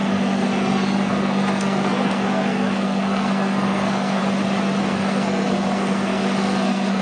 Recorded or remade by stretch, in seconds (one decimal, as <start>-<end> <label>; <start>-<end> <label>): 0.0-4.2 remade; 4.2-4.8 recorded; 4.8-7.0 remade